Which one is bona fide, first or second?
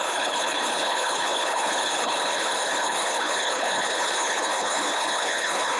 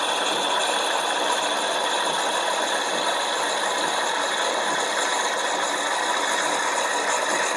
second